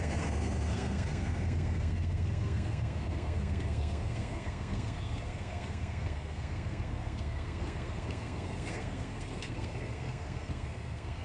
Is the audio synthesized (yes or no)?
yes